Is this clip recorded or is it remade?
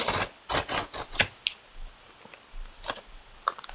recorded